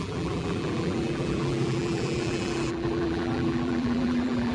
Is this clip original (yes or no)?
no